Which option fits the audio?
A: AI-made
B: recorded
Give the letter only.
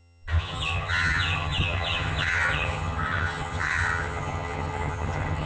A